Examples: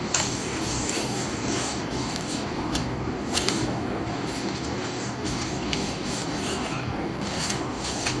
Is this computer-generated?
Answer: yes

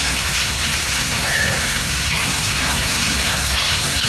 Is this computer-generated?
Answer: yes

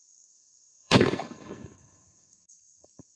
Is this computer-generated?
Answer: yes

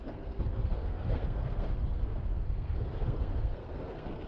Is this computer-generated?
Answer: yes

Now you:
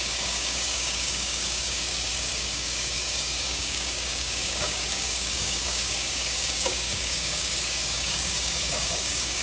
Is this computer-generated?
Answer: yes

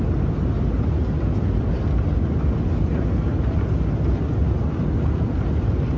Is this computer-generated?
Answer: no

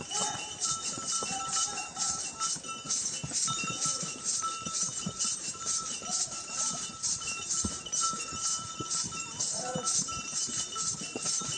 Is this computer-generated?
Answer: yes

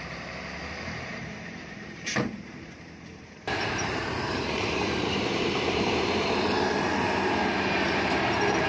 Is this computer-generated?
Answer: yes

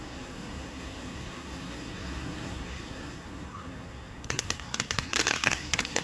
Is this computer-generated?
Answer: yes